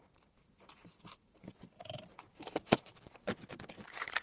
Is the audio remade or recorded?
remade